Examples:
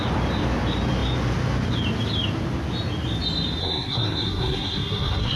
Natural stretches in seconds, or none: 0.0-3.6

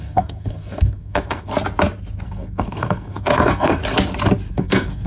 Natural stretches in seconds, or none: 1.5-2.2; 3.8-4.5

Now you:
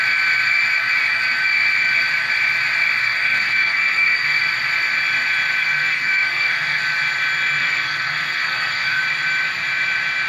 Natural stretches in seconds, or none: 0.0-3.0; 4.4-5.6; 6.8-7.6; 9.0-10.3

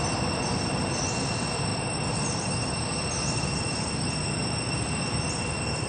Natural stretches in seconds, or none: 0.0-5.9

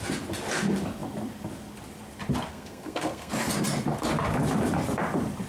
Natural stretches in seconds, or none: 0.0-2.5; 3.3-5.5

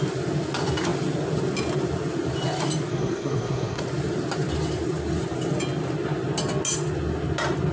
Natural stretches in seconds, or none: 0.0-2.9; 3.8-7.7

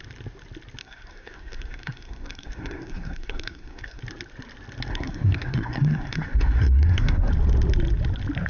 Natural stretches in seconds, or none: 0.0-0.8; 4.0-4.9; 7.3-8.5